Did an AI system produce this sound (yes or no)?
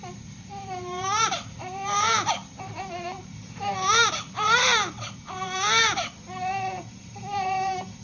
yes